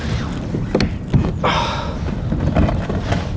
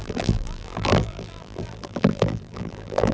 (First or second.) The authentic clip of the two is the first